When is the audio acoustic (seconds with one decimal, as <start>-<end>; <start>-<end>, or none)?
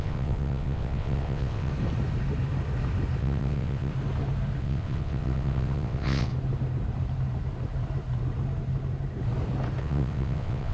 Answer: 1.7-3.2; 3.9-4.6; 6.3-9.8